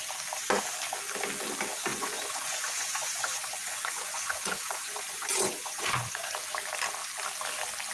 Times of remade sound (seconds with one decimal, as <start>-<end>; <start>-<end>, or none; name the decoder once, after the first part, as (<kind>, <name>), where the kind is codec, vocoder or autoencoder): 1.9-6.3 (vocoder, Vocos)